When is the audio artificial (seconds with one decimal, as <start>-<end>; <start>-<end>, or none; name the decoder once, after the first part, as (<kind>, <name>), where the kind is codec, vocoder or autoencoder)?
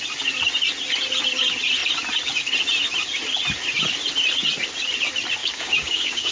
5.4-6.3 (codec, DAC)